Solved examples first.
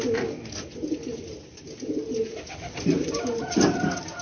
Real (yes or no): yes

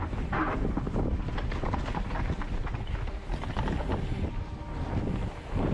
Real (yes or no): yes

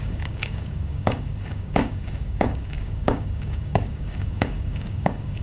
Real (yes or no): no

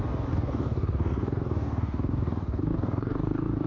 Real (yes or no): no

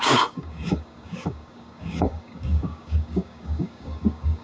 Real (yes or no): no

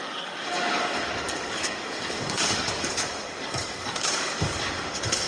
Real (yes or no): no